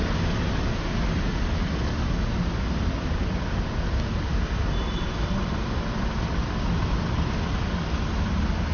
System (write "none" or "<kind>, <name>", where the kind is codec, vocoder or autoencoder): none